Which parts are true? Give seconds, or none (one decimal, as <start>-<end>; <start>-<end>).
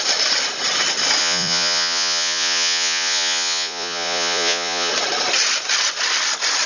0.0-1.2; 4.9-6.7